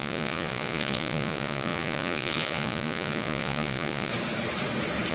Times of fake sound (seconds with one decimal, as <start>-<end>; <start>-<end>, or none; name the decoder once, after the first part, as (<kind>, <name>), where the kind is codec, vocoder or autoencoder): 0.0-4.1 (vocoder, Vocos)